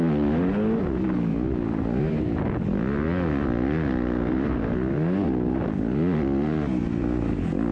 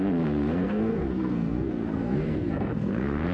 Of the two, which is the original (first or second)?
first